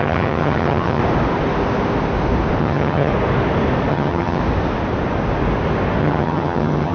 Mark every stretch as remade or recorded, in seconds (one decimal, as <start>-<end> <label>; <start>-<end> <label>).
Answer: 0.0-1.0 remade; 1.0-2.6 recorded; 2.6-3.1 remade; 3.1-3.9 recorded; 3.9-4.4 remade; 4.4-6.0 recorded; 6.0-6.9 remade

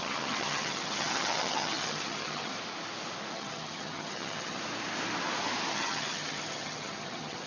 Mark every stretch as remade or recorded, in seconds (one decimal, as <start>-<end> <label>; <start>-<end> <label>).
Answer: 0.0-2.5 remade; 2.5-3.3 recorded; 3.3-4.6 remade; 4.6-5.7 recorded; 5.7-7.5 remade

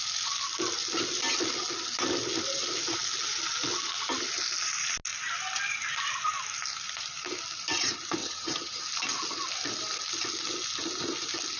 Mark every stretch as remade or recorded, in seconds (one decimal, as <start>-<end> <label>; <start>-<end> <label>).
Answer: 0.0-8.2 recorded; 8.2-8.8 remade; 8.8-11.6 recorded

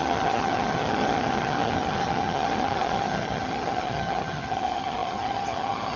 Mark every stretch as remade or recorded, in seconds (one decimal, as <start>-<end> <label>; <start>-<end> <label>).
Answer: 0.0-6.0 remade